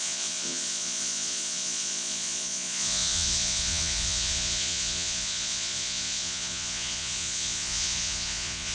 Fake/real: fake